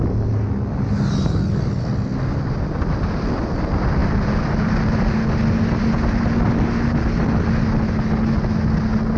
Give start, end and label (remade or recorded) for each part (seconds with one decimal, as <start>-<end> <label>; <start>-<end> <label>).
0.0-9.2 recorded